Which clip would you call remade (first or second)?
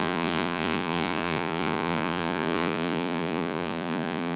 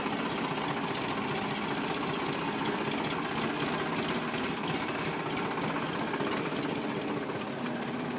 first